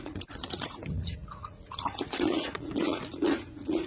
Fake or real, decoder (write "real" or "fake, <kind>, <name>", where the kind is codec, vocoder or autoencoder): fake, vocoder, Vocos